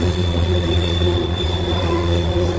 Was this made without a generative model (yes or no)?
no